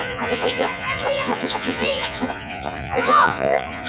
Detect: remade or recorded remade